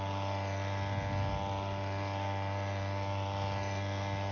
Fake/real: real